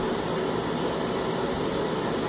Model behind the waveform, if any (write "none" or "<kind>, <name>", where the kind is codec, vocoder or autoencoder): none